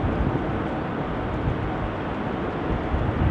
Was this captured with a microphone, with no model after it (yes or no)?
yes